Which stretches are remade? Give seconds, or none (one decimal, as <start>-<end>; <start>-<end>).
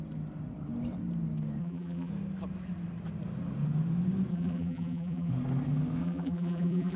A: 1.6-2.1; 4.3-5.3; 6.0-7.0